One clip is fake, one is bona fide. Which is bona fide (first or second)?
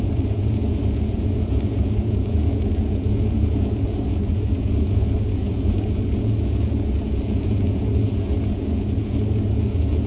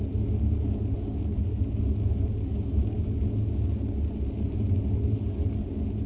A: second